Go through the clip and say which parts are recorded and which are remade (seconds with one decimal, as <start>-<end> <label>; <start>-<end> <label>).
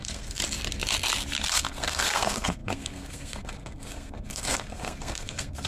0.0-0.4 remade; 0.4-1.5 recorded; 1.5-5.7 remade